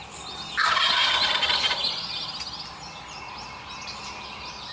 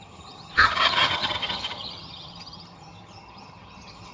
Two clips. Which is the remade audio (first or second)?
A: second